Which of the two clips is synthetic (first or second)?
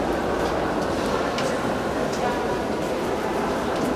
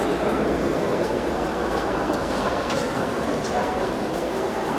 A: second